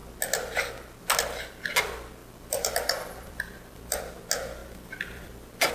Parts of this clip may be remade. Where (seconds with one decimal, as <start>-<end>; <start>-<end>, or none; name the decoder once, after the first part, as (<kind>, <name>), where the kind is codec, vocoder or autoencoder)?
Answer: 2.2-4.0 (vocoder, BigVGAN v2); 4.6-5.7